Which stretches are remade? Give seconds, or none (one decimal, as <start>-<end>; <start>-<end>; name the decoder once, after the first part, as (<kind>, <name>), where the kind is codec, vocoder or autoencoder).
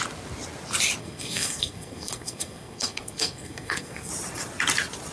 1.0-4.1 (codec, SNAC)